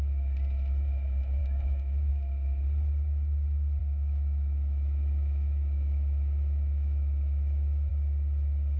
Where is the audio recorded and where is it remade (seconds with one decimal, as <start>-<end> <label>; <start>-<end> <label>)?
0.0-1.4 recorded; 1.4-2.1 remade; 2.1-3.8 recorded; 3.8-7.9 remade; 7.9-8.8 recorded